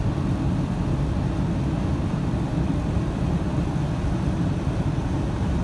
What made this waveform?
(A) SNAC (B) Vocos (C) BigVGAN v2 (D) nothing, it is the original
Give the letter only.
D